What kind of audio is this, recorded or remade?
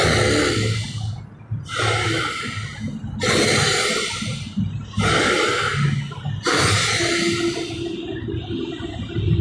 recorded